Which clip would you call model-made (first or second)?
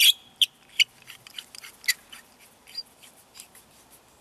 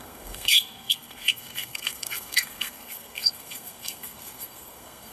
second